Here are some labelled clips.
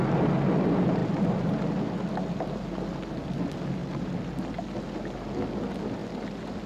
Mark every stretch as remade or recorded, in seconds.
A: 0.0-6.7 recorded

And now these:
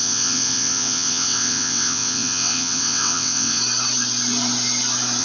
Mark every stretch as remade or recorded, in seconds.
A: 0.0-3.6 remade; 3.6-5.2 recorded

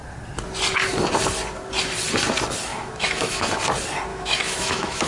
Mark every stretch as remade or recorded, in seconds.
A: 0.0-2.7 recorded; 2.7-3.5 remade; 3.5-4.1 recorded; 4.1-5.1 remade

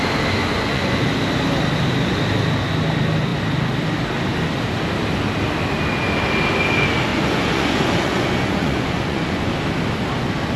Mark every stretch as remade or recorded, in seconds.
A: 0.0-0.4 recorded; 0.4-1.1 remade; 1.1-7.1 recorded; 7.1-9.5 remade; 9.5-10.6 recorded

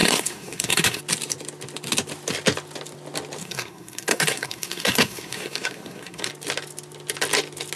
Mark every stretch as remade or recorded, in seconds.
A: 0.0-1.0 remade; 1.0-3.4 recorded; 3.4-6.3 remade; 6.3-7.8 recorded

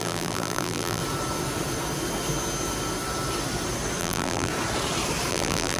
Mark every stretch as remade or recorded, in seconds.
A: 0.0-1.0 remade; 1.0-4.0 recorded; 4.0-4.5 remade; 4.5-5.3 recorded; 5.3-5.8 remade

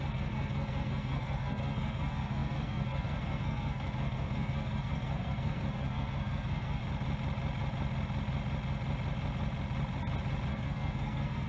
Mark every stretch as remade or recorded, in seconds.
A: 0.0-6.8 remade; 6.8-10.5 recorded; 10.5-11.5 remade

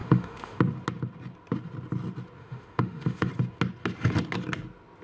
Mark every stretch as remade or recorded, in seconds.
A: 0.0-0.6 remade; 0.6-2.4 recorded; 2.4-3.3 remade; 3.3-5.0 recorded